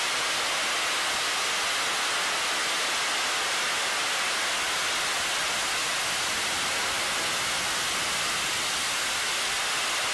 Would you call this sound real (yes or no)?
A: yes